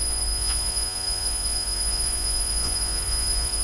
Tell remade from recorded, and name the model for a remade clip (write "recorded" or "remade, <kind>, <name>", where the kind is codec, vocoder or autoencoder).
remade, vocoder, Vocos